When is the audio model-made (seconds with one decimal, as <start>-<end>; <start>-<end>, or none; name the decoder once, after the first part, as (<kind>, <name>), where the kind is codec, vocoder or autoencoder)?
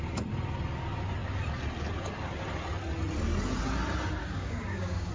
4.2-5.1 (codec, DAC)